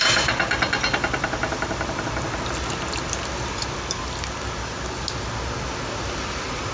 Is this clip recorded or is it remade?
recorded